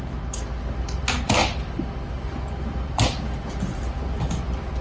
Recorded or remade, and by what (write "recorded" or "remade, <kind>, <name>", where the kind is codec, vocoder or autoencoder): recorded